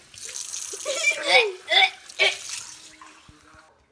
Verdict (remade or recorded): recorded